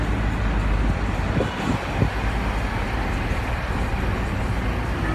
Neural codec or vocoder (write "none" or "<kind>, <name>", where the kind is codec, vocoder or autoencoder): none